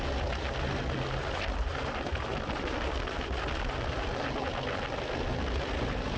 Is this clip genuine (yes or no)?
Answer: yes